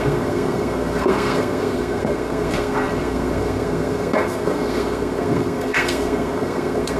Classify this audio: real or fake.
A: fake